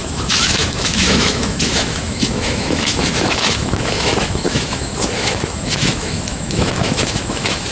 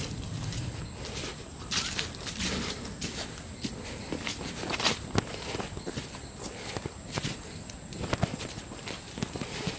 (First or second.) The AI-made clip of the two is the first